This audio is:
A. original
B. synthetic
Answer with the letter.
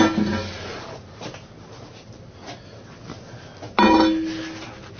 A